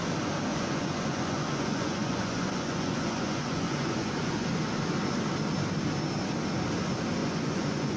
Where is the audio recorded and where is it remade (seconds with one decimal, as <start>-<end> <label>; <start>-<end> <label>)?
0.0-0.5 recorded; 0.5-4.6 remade; 4.6-7.2 recorded; 7.2-8.0 remade